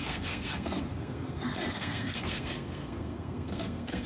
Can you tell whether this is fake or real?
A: fake